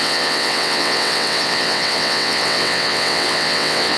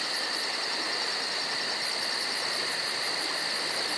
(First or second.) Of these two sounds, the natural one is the second